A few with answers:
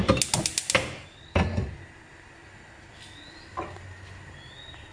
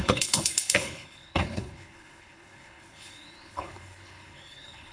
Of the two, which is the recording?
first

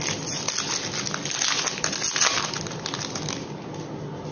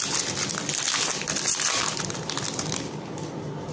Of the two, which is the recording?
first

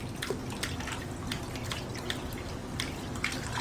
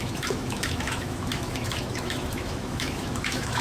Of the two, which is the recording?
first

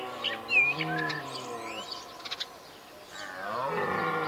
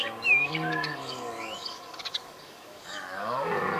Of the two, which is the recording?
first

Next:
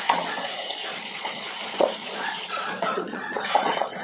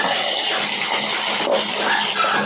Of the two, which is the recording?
second